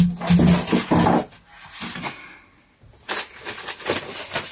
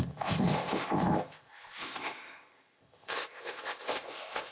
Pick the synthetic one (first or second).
second